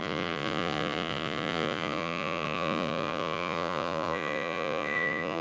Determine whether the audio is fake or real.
fake